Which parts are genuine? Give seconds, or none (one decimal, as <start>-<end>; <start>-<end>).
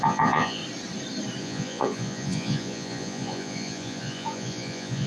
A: 0.6-1.4